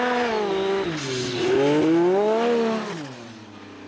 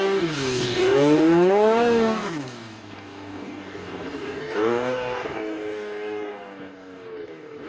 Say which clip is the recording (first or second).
first